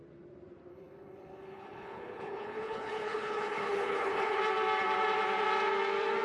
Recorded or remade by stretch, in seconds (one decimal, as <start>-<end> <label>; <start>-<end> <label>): 0.0-0.7 recorded; 0.7-4.4 remade; 4.4-6.2 recorded

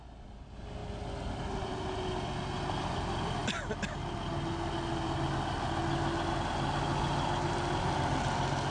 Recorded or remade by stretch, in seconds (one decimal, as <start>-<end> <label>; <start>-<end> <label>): 0.0-8.7 recorded

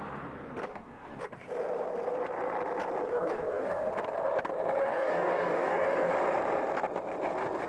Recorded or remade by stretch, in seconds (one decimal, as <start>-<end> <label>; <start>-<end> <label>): 0.0-0.7 recorded; 0.7-1.2 remade; 1.2-3.1 recorded; 3.1-3.9 remade; 3.9-4.8 recorded; 4.8-6.1 remade; 6.1-7.7 recorded

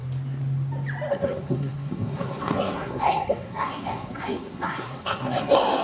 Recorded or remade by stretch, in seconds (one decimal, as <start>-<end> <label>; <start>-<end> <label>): 0.0-1.1 recorded; 1.1-5.8 remade

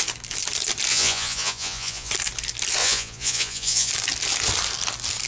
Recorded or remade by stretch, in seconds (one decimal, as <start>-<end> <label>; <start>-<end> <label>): 0.0-0.9 recorded; 0.9-2.1 remade; 2.1-2.8 recorded; 2.8-3.9 remade; 3.9-5.3 recorded

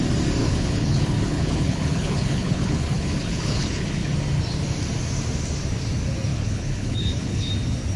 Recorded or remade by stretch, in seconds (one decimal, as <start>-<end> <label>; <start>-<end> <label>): 0.0-0.4 recorded; 0.4-4.1 remade; 4.1-6.3 recorded; 6.3-7.5 remade; 7.5-8.0 recorded

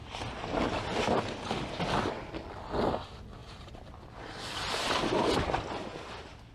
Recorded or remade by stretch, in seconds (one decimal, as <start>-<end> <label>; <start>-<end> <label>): 0.0-6.5 recorded

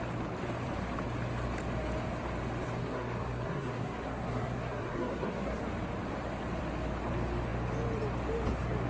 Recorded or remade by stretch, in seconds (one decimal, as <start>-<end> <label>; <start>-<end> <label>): 0.0-2.8 recorded; 2.8-5.6 remade; 5.6-8.9 recorded